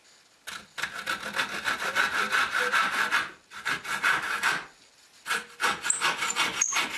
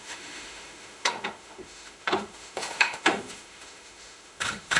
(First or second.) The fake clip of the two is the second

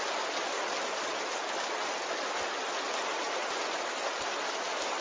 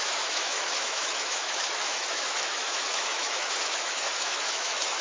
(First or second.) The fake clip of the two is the second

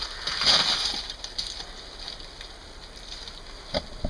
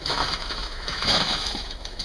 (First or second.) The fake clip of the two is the second